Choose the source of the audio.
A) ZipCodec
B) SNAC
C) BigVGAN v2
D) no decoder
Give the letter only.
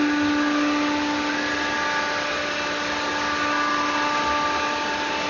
D